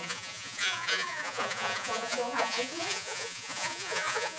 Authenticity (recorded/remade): remade